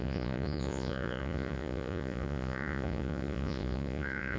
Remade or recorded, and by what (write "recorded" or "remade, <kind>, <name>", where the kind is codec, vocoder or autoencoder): remade, vocoder, Vocos